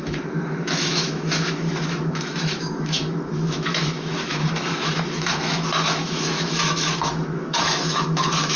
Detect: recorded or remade remade